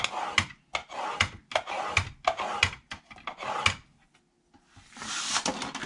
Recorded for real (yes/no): yes